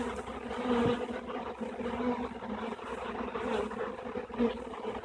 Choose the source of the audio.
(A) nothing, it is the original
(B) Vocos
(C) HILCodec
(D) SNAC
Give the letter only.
A